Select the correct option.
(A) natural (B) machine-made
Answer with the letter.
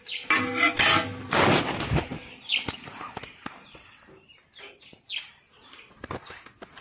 A